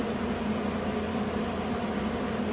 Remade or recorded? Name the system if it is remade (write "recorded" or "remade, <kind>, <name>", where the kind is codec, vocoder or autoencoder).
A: recorded